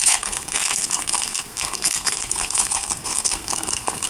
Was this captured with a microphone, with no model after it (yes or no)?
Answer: no